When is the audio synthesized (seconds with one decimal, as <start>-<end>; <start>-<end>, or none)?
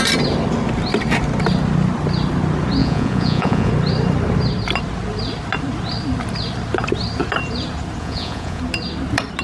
2.8-3.7; 8.0-8.6